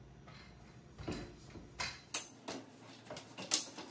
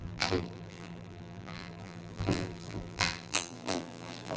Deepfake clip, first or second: second